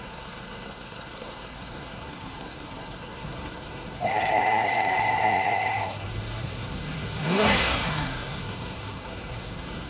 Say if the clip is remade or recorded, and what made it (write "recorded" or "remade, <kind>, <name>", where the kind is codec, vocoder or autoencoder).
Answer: remade, codec, SNAC